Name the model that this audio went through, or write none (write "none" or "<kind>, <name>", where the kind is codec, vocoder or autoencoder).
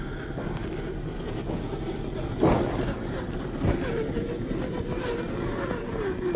none